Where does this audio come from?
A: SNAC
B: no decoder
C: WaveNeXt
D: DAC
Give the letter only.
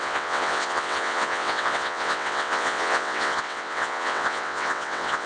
C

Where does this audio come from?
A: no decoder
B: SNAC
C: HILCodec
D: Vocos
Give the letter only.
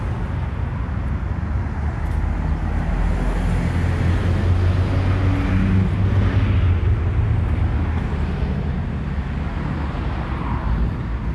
A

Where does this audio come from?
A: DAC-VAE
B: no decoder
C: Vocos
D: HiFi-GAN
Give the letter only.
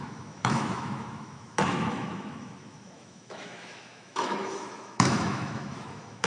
A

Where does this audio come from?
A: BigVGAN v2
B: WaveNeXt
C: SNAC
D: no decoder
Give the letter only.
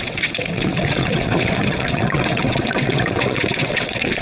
B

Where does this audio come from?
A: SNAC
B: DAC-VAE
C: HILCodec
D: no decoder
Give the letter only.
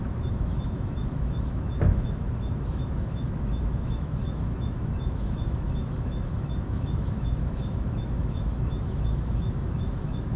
B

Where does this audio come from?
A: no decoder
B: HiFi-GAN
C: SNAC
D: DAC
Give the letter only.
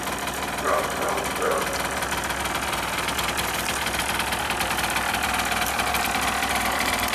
A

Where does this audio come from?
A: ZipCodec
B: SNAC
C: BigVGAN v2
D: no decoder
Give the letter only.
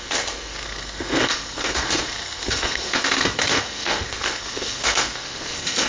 B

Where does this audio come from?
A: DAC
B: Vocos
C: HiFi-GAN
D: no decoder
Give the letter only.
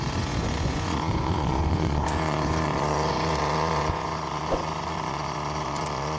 B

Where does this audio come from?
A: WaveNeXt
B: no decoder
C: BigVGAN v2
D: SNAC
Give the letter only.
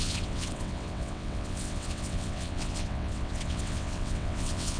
A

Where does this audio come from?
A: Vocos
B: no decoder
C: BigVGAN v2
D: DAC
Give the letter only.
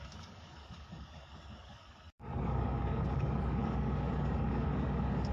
D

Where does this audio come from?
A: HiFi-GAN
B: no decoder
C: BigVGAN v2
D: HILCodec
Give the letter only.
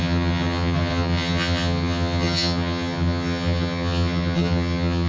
A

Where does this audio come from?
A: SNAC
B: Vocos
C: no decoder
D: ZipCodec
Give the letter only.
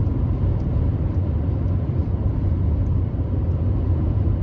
C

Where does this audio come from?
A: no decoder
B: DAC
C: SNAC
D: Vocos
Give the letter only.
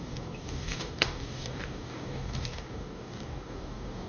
B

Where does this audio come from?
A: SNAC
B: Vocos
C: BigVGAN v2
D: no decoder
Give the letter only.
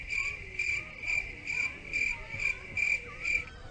D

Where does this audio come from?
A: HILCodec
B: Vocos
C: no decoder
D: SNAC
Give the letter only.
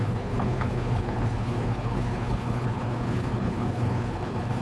A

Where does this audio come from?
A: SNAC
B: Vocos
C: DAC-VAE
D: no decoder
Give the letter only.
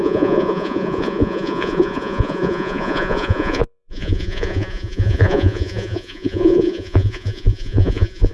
B